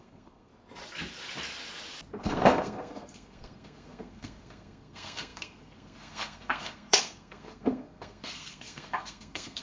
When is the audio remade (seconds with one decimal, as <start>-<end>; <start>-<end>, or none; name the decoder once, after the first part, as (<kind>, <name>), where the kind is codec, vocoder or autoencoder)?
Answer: 0.0-0.5 (codec, SNAC); 2.2-9.6